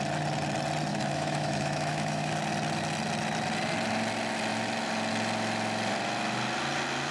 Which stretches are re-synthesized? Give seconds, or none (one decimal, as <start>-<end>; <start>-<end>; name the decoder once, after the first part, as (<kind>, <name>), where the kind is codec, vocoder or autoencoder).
0.9-2.3 (autoencoder, DAC-VAE)